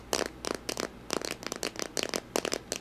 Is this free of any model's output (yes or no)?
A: yes